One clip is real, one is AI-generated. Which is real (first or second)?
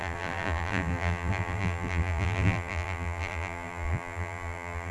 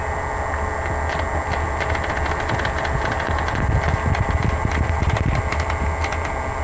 second